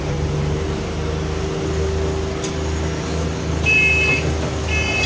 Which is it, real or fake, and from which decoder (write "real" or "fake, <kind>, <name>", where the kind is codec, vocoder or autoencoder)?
real